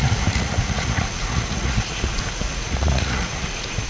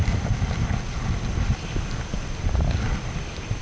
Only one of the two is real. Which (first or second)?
second